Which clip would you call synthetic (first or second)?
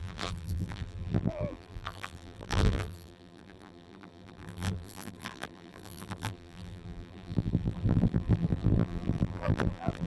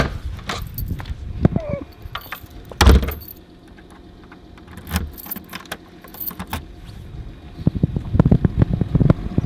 first